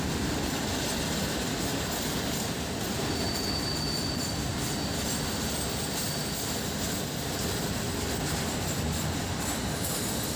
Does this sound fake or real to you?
real